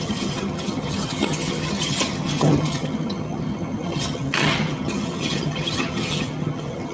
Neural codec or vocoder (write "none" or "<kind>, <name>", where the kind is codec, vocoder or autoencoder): vocoder, HiFi-GAN